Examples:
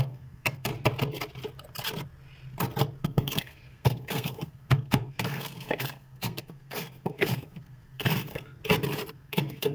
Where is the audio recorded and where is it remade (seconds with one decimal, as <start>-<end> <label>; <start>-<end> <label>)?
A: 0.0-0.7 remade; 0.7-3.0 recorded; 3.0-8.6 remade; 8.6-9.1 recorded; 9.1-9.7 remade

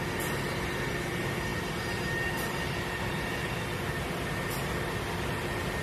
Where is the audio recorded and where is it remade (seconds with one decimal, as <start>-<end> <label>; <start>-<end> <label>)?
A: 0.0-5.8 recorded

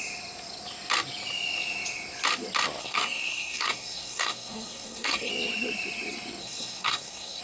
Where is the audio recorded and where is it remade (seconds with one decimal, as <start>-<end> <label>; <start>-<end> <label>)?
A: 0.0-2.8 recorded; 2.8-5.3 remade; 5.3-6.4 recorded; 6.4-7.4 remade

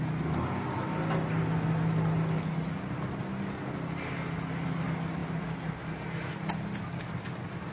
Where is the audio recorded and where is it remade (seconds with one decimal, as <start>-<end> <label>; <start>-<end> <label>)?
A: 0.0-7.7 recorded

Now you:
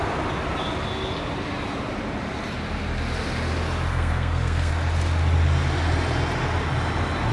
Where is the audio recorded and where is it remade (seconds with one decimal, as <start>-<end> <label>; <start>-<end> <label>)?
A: 0.0-3.9 recorded; 3.9-4.7 remade; 4.7-7.3 recorded

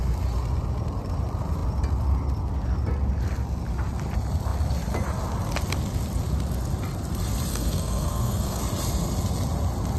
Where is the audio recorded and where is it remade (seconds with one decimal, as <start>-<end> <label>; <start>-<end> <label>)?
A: 0.0-7.5 recorded; 7.5-8.6 remade; 8.6-10.0 recorded